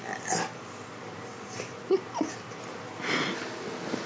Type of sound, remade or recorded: recorded